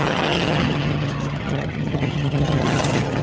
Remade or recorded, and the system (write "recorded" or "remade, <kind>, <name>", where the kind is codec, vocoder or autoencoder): remade, vocoder, HiFi-GAN